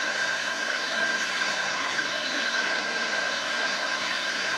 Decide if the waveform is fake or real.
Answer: fake